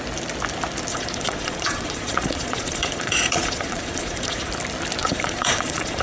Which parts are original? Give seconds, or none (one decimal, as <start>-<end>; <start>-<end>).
0.0-0.9; 4.5-5.0